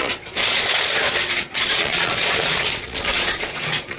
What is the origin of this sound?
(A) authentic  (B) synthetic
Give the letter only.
B